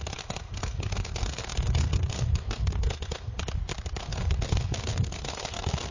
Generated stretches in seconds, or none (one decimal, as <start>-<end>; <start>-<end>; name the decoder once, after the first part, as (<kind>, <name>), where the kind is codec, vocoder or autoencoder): 0.0-3.4 (codec, SNAC); 4.0-5.9